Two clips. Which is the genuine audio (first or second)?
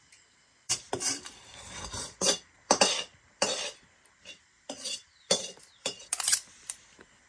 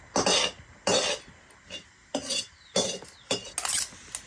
second